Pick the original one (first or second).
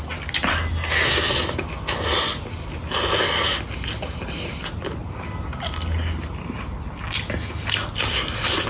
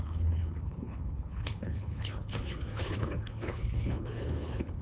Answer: first